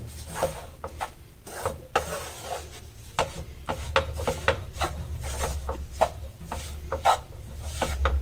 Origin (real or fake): real